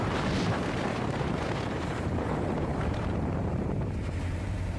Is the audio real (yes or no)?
no